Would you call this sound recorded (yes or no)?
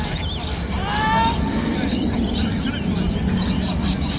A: yes